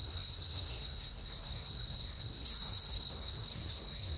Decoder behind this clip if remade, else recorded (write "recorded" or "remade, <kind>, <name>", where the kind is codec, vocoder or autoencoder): remade, codec, SNAC